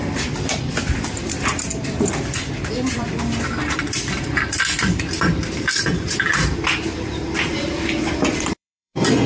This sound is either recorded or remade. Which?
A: remade